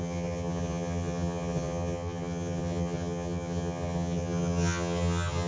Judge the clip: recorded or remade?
remade